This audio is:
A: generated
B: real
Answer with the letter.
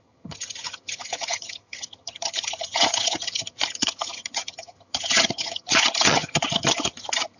A